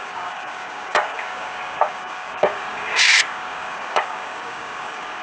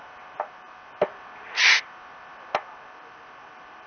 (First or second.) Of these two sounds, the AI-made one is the first